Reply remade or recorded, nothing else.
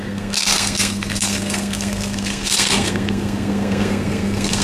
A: remade